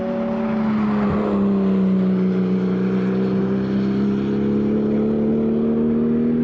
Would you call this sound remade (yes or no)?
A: no